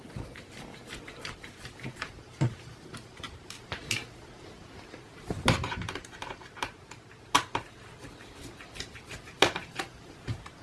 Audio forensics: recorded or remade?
remade